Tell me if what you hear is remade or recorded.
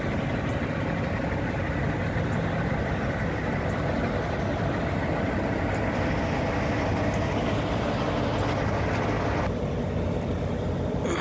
recorded